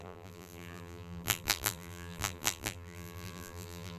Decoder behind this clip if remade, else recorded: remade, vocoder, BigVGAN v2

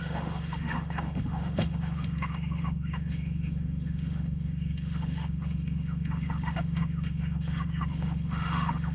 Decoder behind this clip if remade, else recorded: remade, autoencoder, DAC-VAE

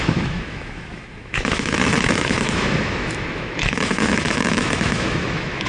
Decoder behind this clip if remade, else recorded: remade, autoencoder, DAC-VAE